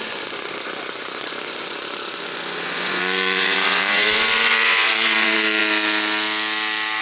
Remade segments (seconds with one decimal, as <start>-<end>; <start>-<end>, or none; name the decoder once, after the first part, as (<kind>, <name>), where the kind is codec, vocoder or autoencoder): 0.0-5.6 (vocoder, Vocos)